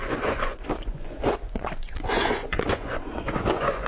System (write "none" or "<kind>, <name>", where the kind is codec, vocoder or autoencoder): vocoder, Vocos